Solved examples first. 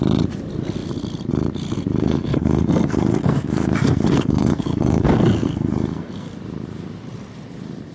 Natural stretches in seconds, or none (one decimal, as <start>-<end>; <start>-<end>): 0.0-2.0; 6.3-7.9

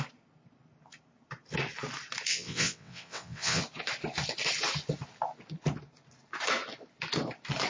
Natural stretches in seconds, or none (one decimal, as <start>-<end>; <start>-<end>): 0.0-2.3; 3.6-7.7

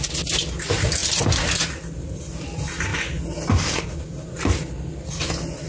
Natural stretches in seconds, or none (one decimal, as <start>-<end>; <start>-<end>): 0.0-5.7

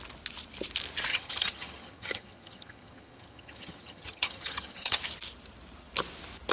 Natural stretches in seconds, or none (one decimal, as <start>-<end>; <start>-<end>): 0.0-1.1; 5.0-6.5